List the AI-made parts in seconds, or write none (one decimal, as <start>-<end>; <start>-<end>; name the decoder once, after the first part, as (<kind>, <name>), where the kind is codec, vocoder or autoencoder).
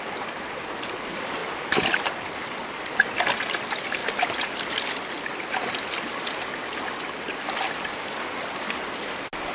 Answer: none